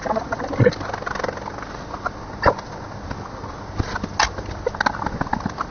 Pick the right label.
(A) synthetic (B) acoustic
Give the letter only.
B